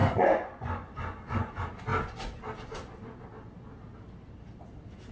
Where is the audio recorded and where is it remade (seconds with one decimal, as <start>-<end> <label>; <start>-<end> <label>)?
0.0-1.5 remade; 1.5-5.1 recorded